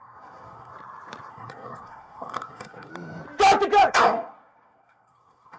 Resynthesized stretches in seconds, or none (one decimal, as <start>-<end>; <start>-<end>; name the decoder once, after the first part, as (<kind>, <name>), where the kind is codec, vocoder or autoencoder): 0.0-0.7 (codec, SNAC); 1.3-2.9; 3.9-5.6